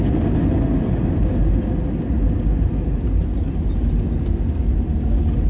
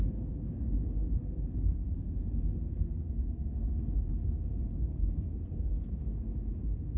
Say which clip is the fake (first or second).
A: second